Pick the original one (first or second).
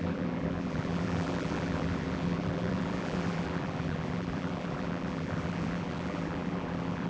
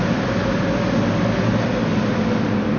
second